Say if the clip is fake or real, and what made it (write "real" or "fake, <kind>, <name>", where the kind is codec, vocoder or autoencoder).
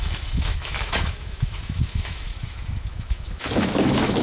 fake, autoencoder, DAC-VAE